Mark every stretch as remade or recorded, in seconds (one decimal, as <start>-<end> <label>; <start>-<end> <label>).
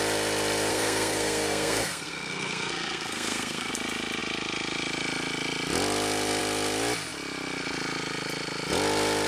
0.0-0.7 recorded; 0.7-3.7 remade; 3.7-9.3 recorded